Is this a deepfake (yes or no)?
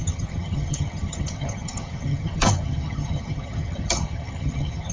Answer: yes